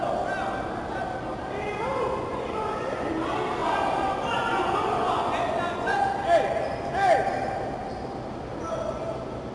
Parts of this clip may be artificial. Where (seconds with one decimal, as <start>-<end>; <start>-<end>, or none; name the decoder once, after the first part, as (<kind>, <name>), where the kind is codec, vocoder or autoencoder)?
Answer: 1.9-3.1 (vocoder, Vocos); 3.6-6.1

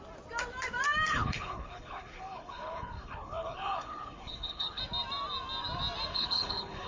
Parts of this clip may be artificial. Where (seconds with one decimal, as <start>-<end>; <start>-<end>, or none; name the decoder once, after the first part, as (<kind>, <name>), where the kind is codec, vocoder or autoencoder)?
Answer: 1.1-4.8 (codec, HILCodec); 6.1-6.9

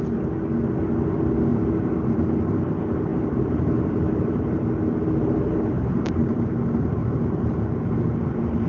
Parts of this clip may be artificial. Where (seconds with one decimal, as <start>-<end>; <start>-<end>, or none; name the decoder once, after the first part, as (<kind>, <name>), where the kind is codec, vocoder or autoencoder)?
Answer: 1.5-2.5 (vocoder, BigVGAN v2); 3.1-4.6; 5.2-6.1; 7.0-7.6

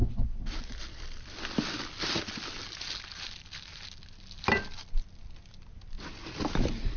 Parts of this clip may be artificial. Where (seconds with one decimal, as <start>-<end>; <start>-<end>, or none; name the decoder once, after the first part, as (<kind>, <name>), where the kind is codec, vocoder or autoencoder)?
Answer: none

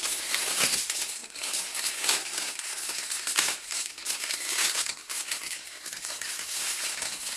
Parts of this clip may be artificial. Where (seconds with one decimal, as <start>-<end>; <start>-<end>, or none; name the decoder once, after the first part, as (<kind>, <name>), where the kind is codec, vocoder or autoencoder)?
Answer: 0.0-7.4 (codec, SNAC)

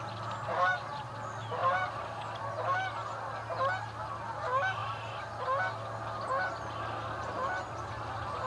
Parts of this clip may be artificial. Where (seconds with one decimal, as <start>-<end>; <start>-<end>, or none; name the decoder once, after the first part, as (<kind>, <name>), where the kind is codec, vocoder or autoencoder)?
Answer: none

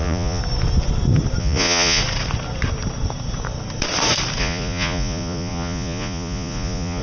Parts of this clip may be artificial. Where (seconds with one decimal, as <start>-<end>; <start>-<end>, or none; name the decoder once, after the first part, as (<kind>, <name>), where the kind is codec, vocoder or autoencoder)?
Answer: 0.0-0.4 (vocoder, Vocos); 1.4-2.0; 4.4-7.0